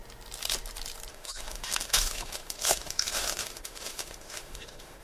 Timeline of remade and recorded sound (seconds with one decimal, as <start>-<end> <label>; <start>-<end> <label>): 0.0-1.1 recorded; 1.1-5.0 remade